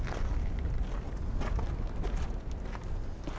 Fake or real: real